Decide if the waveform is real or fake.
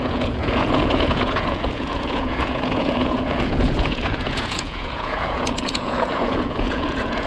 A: fake